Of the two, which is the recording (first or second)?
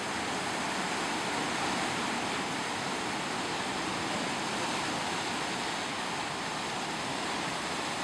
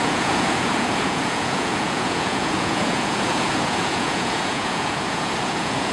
first